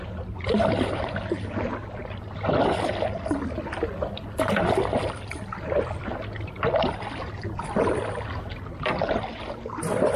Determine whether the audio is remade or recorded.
recorded